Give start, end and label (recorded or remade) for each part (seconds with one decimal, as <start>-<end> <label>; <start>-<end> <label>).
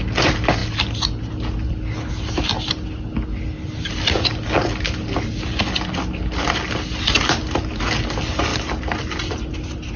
0.0-10.0 recorded